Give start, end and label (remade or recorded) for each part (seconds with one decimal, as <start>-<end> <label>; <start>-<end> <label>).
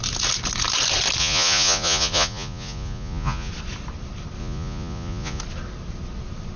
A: 0.0-1.2 recorded; 1.2-3.5 remade; 3.5-4.4 recorded; 4.4-5.4 remade; 5.4-6.6 recorded